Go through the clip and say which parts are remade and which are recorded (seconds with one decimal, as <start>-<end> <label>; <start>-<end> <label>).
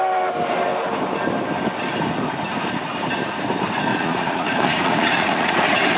0.0-3.9 recorded; 3.9-5.6 remade; 5.6-6.0 recorded